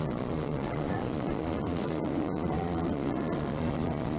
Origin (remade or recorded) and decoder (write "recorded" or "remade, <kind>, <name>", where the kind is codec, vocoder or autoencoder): remade, vocoder, Vocos